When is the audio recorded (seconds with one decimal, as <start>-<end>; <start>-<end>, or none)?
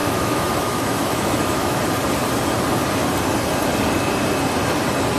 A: 1.8-5.2